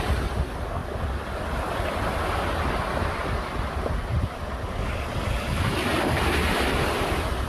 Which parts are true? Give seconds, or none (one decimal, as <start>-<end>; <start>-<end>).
0.0-7.5